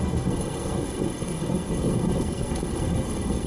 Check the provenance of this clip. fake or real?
fake